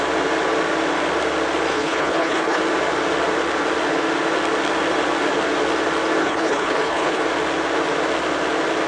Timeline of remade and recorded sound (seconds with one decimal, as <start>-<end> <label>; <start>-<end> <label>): 0.0-1.7 recorded; 1.7-2.6 remade; 2.6-6.2 recorded; 6.2-7.2 remade; 7.2-8.9 recorded